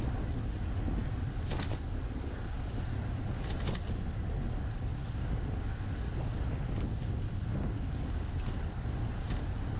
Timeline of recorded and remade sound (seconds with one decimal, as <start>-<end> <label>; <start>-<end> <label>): 0.0-9.8 recorded